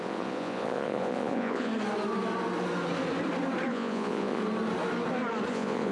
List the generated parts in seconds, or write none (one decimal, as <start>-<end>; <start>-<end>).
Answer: 0.0-1.7; 3.7-4.4; 5.5-5.9